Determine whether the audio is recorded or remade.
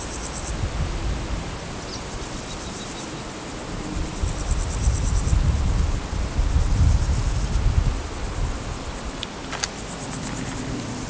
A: recorded